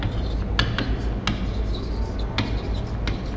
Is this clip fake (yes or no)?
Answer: no